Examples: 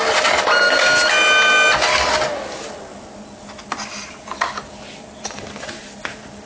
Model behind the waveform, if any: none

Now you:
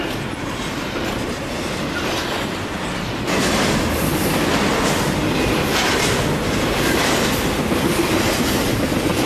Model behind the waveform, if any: vocoder, BigVGAN v2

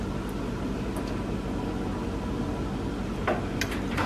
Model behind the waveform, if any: none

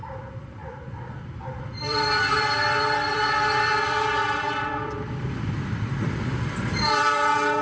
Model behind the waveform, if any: vocoder, BigVGAN v2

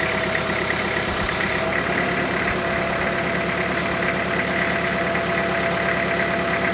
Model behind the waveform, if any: none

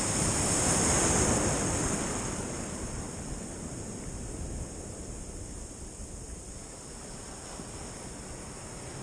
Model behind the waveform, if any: vocoder, BigVGAN v2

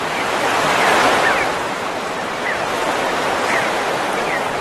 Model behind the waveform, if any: vocoder, BigVGAN v2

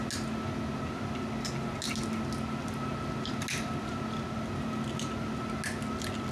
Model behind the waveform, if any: none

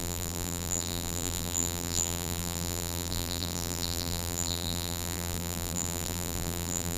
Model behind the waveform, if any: vocoder, BigVGAN v2